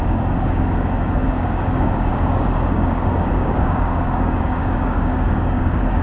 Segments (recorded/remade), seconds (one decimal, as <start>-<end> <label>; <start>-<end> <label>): 0.0-6.0 remade